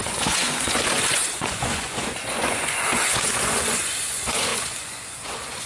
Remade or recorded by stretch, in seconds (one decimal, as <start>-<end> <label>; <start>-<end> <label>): 0.0-5.7 remade